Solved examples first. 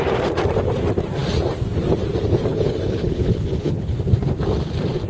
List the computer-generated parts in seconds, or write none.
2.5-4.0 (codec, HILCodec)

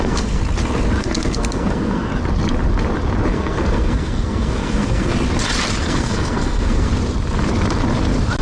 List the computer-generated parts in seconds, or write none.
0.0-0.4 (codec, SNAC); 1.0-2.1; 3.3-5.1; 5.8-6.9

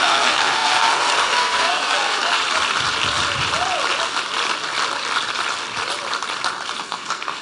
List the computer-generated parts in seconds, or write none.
0.0-2.4 (codec, SNAC); 6.8-7.4